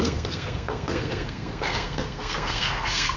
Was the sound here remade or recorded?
remade